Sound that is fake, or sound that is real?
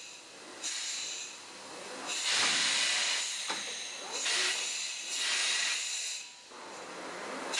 real